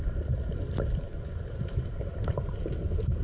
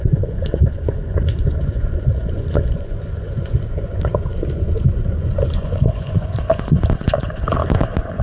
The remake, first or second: second